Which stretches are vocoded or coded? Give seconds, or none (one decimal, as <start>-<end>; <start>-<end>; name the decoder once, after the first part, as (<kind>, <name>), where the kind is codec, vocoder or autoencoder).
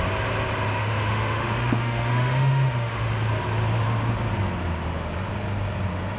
0.8-3.1 (autoencoder, DAC-VAE)